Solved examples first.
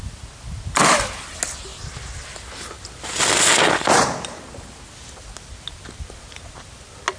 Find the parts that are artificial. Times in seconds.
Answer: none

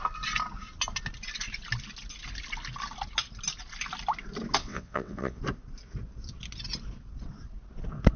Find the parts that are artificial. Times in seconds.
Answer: 4.6-5.4 (vocoder, WaveNeXt)